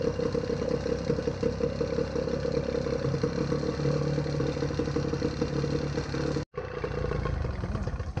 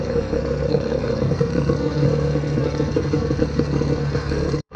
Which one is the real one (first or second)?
first